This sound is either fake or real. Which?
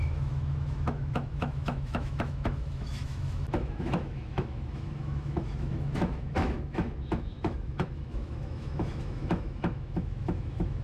fake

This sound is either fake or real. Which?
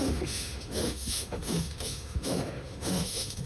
fake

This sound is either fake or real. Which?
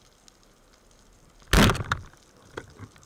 real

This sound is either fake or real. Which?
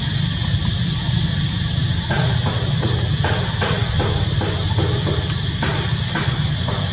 real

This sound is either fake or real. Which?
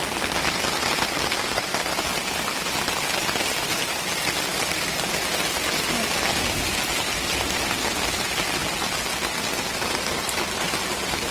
real